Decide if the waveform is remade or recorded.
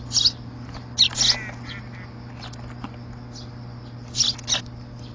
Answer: recorded